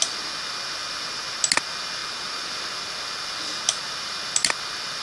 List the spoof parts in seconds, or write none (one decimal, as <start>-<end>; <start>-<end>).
none